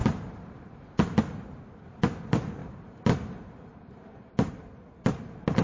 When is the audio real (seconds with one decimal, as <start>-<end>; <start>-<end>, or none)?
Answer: 1.2-2.6; 4.5-5.6